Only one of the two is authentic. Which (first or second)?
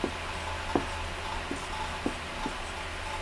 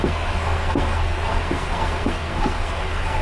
first